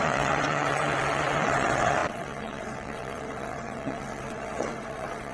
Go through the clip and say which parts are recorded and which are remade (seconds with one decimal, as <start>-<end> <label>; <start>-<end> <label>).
0.0-5.3 remade